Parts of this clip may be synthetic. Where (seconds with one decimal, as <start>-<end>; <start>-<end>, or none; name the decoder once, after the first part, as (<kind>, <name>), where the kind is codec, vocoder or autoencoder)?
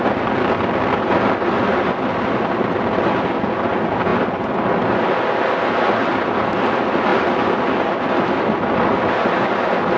none